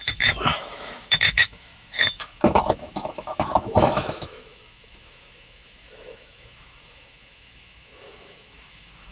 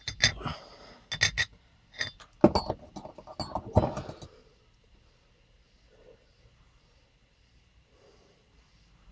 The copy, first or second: first